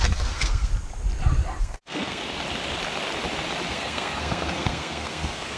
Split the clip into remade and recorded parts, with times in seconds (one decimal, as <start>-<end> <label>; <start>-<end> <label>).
0.0-0.7 remade; 0.7-1.6 recorded; 1.6-2.2 remade; 2.2-3.7 recorded; 3.7-5.6 remade